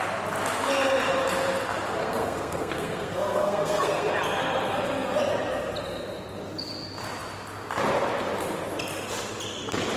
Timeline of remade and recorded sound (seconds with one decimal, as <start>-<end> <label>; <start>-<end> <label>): 0.0-2.0 recorded; 2.0-4.1 remade; 4.1-10.0 recorded